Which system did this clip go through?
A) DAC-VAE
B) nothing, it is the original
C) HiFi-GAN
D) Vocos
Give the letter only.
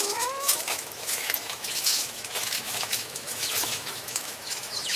A